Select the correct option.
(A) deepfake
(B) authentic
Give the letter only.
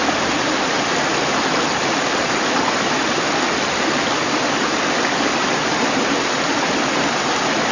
B